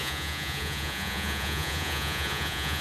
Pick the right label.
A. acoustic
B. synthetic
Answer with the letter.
B